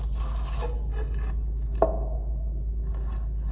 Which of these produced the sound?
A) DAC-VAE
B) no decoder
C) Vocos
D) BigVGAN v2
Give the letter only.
B